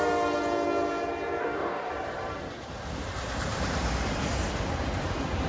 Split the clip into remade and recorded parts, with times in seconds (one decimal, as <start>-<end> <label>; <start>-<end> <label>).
0.0-1.4 recorded; 1.4-1.9 remade; 1.9-5.5 recorded